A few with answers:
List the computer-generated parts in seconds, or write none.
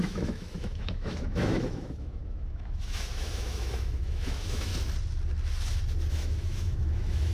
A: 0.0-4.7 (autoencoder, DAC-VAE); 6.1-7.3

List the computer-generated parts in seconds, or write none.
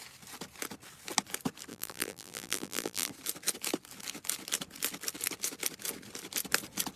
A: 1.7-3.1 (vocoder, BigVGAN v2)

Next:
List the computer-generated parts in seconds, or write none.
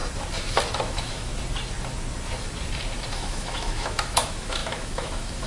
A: 0.8-1.3 (autoencoder, DAC-VAE); 3.1-5.5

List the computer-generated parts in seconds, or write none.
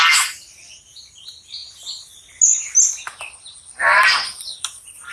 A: none